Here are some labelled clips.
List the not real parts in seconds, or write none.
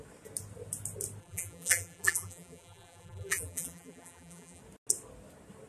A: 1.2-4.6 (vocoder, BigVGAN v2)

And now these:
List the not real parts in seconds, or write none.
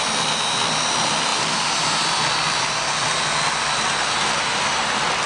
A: none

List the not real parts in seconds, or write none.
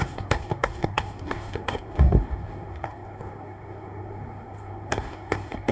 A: 0.0-5.7 (codec, SNAC)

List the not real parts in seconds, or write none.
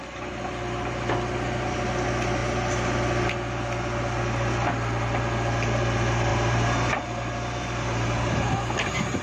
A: 6.3-7.0 (vocoder, BigVGAN v2)